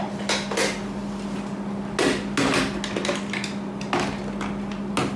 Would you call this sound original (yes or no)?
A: yes